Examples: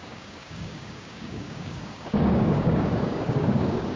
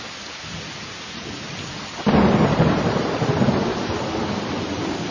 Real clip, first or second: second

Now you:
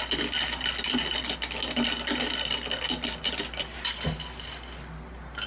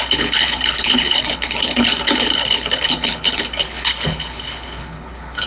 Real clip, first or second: first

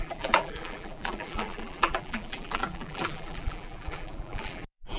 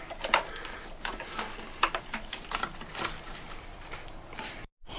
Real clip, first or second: second